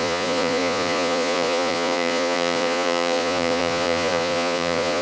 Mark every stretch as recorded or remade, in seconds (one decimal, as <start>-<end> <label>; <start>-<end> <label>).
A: 0.0-5.0 remade